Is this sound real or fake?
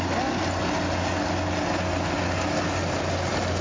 real